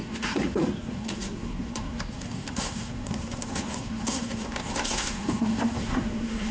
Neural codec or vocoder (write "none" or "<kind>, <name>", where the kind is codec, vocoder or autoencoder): codec, SNAC